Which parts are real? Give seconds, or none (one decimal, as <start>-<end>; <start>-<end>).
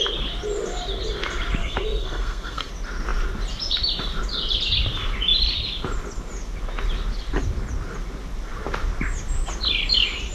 0.0-1.6; 2.7-10.3